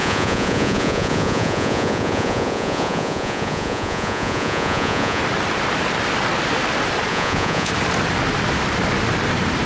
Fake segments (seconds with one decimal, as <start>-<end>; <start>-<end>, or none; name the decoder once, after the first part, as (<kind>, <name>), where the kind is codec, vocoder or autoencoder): 0.0-5.2 (vocoder, Vocos); 7.1-7.7